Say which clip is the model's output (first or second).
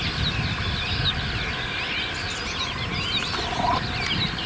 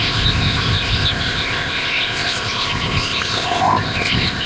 second